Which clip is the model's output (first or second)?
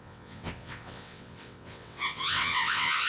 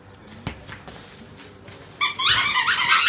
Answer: first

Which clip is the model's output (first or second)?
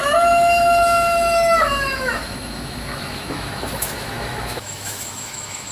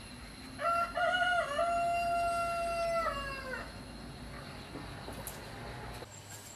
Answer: first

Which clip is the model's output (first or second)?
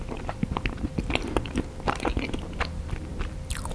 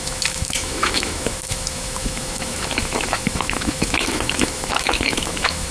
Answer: second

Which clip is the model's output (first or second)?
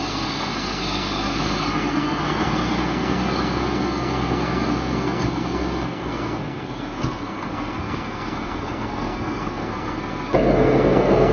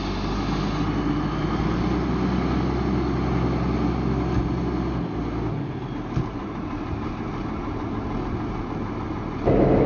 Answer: first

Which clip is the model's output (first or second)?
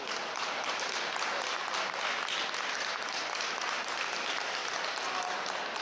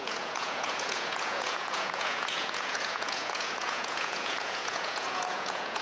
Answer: second